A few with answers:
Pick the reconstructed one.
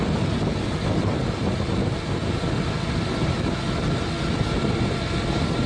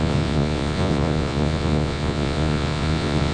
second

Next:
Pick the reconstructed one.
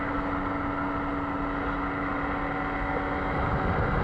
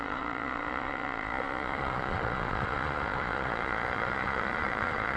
second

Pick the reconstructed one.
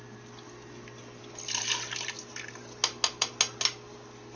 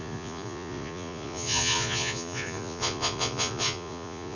second